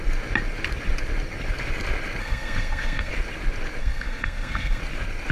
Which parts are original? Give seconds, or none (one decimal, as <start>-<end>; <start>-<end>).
0.0-2.2; 3.1-3.8; 4.8-5.3